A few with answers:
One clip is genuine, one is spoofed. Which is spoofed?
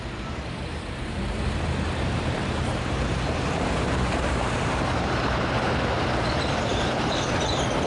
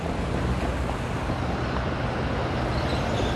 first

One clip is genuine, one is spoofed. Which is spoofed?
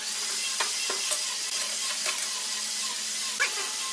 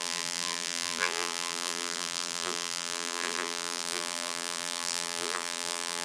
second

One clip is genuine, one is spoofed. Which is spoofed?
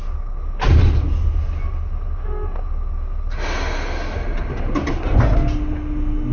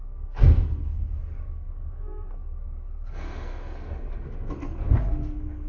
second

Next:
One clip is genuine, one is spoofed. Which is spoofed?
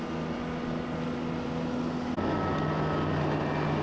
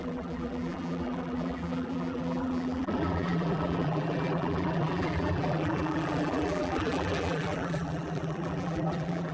second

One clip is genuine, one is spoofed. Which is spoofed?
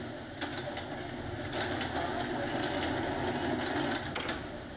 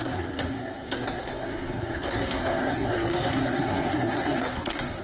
second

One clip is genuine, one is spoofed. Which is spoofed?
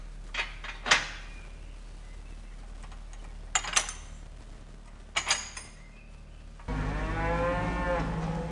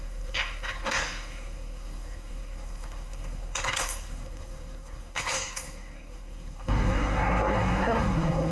second